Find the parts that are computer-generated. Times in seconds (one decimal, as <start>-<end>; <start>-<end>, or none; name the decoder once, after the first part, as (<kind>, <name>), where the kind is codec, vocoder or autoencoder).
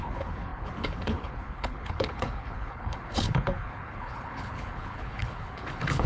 0.0-6.1 (codec, HILCodec)